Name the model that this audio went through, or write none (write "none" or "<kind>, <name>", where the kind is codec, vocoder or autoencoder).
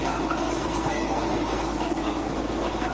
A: codec, SNAC